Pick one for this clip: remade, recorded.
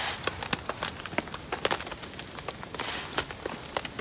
recorded